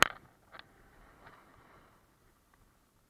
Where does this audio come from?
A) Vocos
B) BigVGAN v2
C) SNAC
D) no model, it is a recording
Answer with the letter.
D